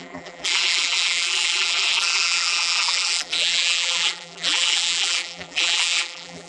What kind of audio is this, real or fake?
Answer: fake